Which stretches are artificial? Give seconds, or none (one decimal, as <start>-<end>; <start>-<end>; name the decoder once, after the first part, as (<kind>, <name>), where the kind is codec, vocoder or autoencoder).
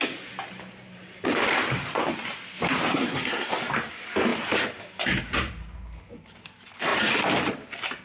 2.9-3.5 (codec, SNAC)